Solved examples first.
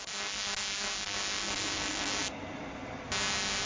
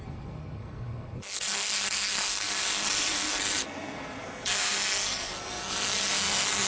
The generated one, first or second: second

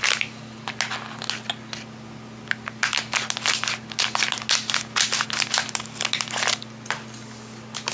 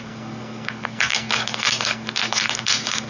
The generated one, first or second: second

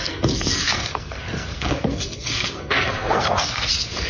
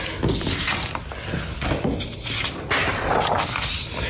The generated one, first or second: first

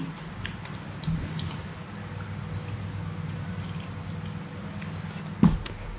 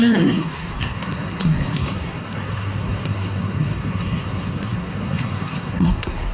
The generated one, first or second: second